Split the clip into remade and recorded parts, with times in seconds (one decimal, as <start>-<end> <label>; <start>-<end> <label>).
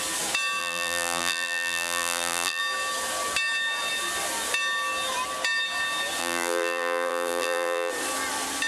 0.0-0.6 recorded; 0.6-2.6 remade; 2.6-6.2 recorded; 6.2-7.9 remade; 7.9-8.7 recorded